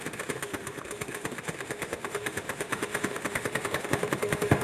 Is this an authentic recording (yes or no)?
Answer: no